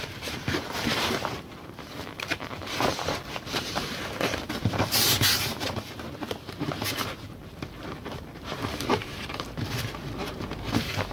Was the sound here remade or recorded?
remade